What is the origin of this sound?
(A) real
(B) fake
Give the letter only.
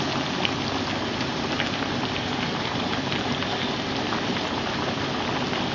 A